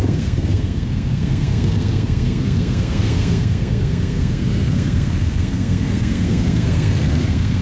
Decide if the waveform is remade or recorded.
remade